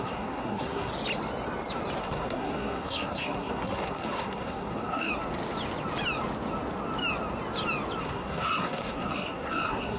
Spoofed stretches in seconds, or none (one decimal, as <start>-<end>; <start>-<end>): 0.0-0.9; 2.0-5.1; 8.0-10.0